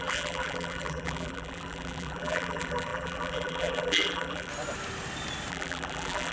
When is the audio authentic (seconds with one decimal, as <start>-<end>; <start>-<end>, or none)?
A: 4.5-5.5